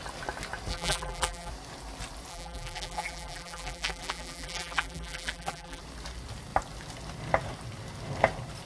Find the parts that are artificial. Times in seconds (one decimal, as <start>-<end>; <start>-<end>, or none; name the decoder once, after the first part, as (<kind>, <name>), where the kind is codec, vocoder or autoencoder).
0.7-1.5 (vocoder, BigVGAN v2); 2.3-5.8

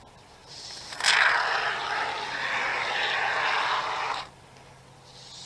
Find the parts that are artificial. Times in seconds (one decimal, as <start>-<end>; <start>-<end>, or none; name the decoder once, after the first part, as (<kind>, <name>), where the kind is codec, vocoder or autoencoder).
0.4-1.1 (vocoder, BigVGAN v2)